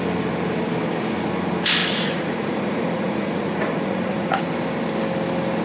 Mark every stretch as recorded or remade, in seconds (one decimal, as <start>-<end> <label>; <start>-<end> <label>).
0.0-1.8 recorded; 1.8-4.4 remade; 4.4-5.6 recorded